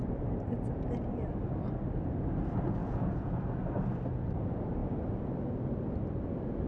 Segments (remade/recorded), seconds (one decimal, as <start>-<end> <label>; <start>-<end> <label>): 0.0-2.8 recorded; 2.8-3.4 remade; 3.4-6.7 recorded